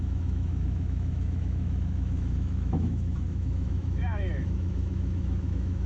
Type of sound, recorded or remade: remade